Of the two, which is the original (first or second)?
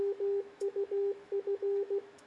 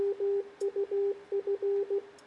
second